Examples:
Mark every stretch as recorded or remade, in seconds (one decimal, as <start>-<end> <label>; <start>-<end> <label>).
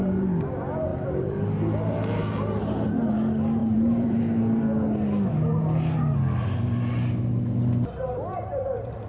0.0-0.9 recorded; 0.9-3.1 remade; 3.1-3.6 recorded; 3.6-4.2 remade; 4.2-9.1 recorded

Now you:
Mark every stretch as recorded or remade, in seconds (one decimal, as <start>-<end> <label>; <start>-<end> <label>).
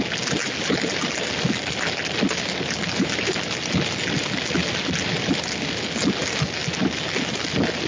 0.0-4.6 recorded; 4.6-5.3 remade; 5.3-6.6 recorded; 6.6-7.1 remade; 7.1-7.9 recorded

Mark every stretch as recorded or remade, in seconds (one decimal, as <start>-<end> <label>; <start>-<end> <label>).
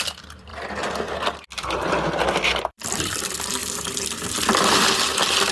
0.0-0.5 remade; 0.5-2.6 recorded; 2.6-3.6 remade; 3.6-5.5 recorded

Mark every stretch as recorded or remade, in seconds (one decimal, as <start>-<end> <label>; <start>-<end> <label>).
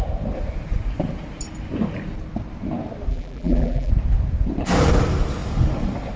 0.0-3.1 recorded; 3.1-3.9 remade; 3.9-6.2 recorded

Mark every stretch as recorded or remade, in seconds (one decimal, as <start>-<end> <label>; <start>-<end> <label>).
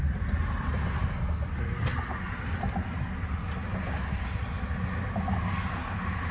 0.0-6.3 recorded